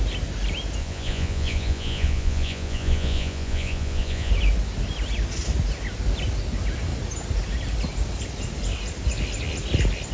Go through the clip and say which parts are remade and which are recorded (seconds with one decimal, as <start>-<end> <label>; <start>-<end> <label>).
0.0-0.8 recorded; 0.8-4.3 remade; 4.3-10.1 recorded

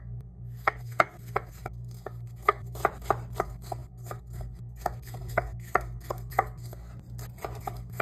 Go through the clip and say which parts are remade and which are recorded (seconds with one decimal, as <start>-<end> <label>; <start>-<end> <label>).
0.0-2.8 remade; 2.8-3.4 recorded; 3.4-6.9 remade; 6.9-7.6 recorded; 7.6-8.0 remade

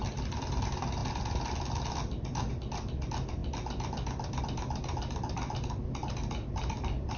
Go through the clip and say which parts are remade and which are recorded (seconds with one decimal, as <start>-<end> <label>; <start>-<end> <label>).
0.0-7.2 recorded

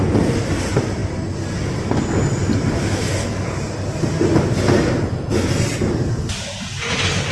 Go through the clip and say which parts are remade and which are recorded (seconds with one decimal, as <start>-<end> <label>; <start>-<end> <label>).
0.0-7.3 recorded

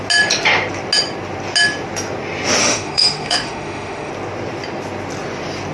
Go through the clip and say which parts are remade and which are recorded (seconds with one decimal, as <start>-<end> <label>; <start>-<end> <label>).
0.0-2.6 recorded; 2.6-4.1 remade; 4.1-5.7 recorded

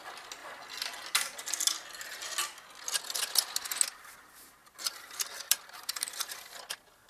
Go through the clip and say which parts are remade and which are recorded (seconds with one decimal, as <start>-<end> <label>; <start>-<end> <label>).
0.0-4.6 recorded; 4.6-5.7 remade; 5.7-7.1 recorded